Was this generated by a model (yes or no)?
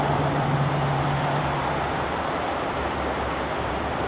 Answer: yes